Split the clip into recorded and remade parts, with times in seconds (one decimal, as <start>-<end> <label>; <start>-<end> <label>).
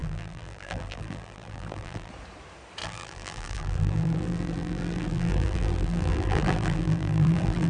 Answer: 0.0-2.1 remade; 2.1-2.8 recorded; 2.8-7.7 remade